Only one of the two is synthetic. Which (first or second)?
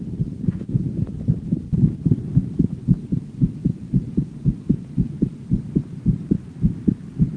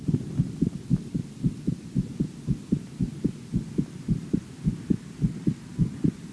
first